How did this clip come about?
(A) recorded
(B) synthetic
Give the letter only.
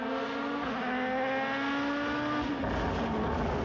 A